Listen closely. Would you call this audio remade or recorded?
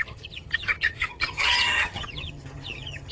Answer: remade